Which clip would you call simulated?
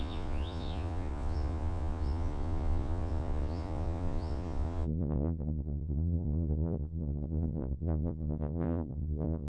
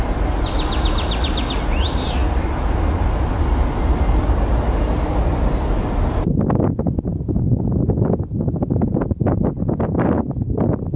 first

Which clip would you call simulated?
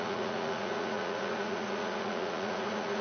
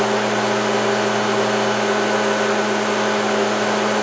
first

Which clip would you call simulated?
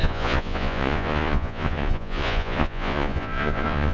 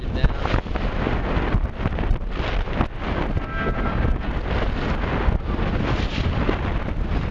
first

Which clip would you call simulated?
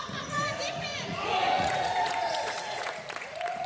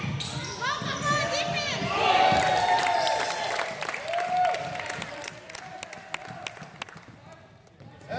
first